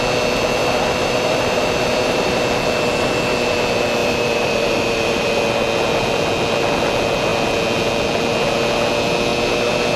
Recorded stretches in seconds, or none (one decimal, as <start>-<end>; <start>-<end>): 0.0-0.6; 2.4-4.0; 5.3-10.0